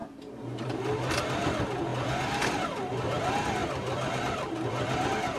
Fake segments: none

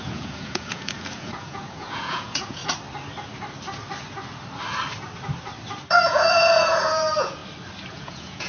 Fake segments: 0.0-2.6 (vocoder, Vocos); 5.9-7.4; 7.9-8.5

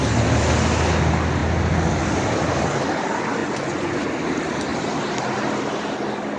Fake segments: 3.4-4.0 (vocoder, Vocos)

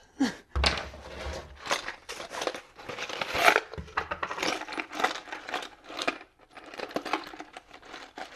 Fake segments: none

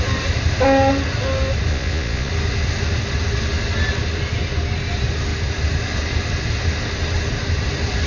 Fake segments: 1.7-2.3 (vocoder, Vocos)

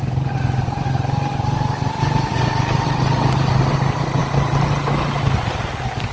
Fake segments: none